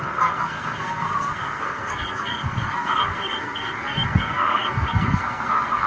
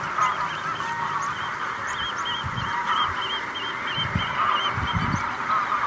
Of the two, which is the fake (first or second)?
first